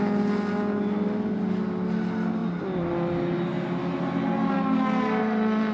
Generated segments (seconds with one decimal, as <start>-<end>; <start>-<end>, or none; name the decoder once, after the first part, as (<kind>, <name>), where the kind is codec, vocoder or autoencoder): none